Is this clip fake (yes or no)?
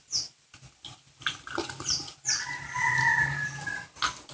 no